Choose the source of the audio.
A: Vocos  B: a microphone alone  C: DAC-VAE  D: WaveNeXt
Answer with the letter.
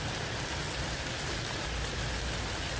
B